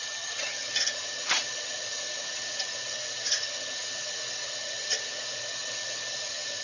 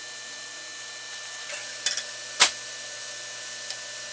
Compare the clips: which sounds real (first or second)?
second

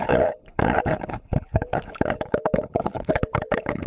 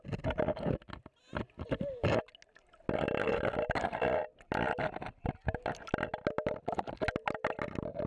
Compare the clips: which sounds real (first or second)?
second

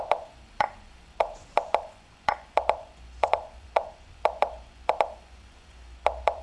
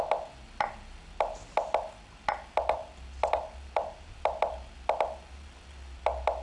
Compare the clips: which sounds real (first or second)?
second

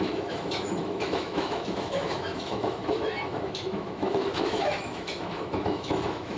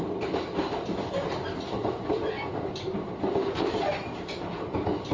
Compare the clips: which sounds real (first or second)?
second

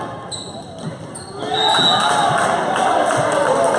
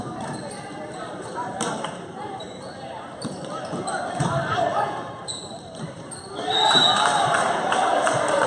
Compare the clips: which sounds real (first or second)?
first